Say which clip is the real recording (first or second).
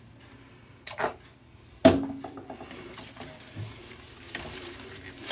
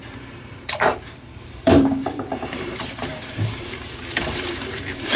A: first